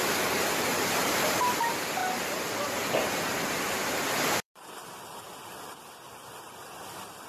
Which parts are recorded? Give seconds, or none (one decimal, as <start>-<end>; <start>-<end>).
2.0-3.6

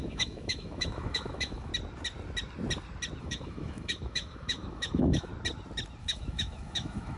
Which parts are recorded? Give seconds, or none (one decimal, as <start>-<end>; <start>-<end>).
1.7-3.2; 5.3-6.0

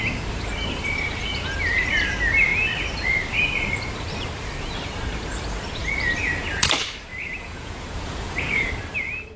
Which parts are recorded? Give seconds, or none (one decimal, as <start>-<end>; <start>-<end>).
0.0-7.1; 8.7-9.4

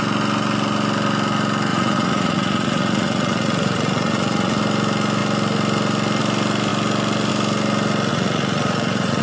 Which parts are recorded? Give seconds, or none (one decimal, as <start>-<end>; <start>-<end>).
0.0-1.7; 4.6-8.1

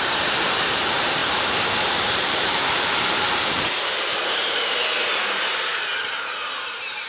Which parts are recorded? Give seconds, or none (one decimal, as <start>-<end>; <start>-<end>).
none